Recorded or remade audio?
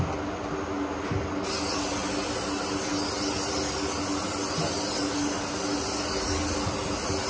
recorded